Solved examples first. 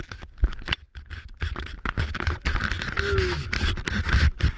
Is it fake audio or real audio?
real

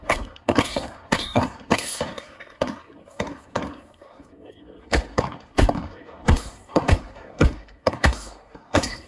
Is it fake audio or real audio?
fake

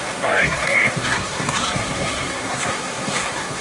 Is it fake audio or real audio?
fake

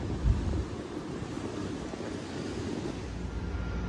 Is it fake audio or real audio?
real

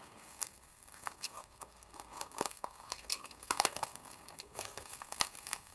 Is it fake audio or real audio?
fake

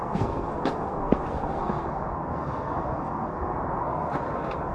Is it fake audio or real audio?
fake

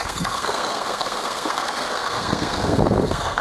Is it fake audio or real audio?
fake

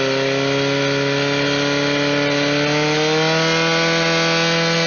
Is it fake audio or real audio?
real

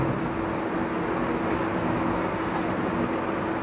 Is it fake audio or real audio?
real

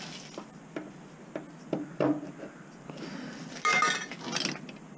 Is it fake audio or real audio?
real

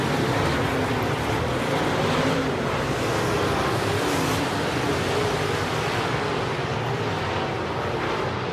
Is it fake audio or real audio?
real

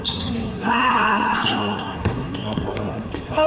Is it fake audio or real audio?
fake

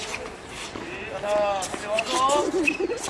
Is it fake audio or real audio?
real